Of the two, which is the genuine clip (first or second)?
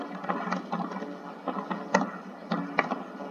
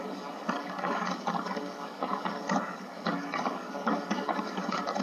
first